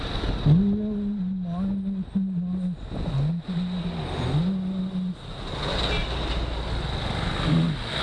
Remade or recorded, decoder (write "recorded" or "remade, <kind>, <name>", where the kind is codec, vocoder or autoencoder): recorded